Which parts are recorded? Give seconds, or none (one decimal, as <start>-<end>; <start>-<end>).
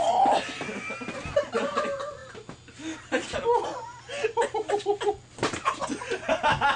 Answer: 0.0-6.8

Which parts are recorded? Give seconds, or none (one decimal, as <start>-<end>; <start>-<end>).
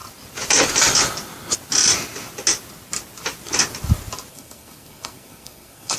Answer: 0.0-4.3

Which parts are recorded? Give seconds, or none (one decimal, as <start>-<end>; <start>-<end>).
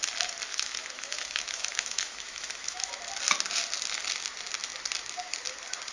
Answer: 0.0-0.5; 2.9-5.9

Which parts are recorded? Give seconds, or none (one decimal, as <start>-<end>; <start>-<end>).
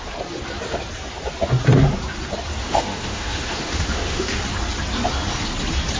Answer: 0.0-2.6; 4.4-6.0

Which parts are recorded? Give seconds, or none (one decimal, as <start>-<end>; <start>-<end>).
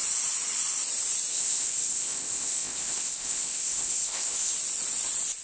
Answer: 0.0-1.3; 4.5-5.4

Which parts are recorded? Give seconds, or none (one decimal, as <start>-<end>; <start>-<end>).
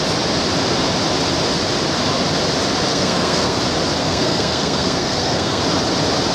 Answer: 0.0-2.9; 3.6-4.0; 5.6-6.3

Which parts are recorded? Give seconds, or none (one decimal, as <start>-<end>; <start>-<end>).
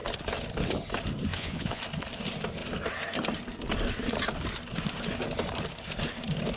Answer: 0.0-1.3; 1.8-6.6